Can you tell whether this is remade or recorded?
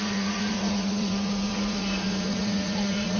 remade